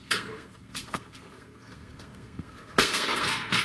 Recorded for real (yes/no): no